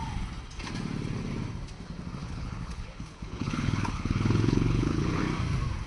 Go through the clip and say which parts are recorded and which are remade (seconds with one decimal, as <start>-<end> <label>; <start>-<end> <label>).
0.0-2.2 recorded; 2.2-5.2 remade; 5.2-5.9 recorded